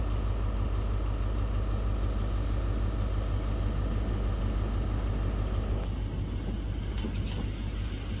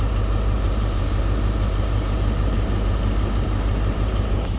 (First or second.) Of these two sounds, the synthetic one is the second